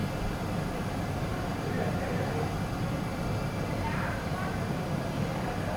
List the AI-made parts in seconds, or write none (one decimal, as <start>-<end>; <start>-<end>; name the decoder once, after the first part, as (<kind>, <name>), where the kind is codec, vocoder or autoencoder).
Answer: 0.0-2.2 (vocoder, BigVGAN v2); 3.1-4.5